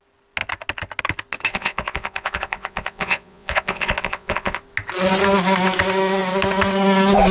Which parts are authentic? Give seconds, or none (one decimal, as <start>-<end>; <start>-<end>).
0.0-1.5; 4.6-7.3